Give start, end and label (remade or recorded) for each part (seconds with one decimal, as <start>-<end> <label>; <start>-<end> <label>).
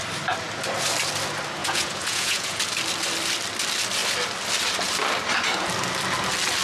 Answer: 0.0-1.6 recorded; 1.6-2.6 remade; 2.6-6.6 recorded